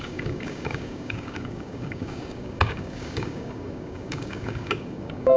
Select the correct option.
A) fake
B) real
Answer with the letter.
A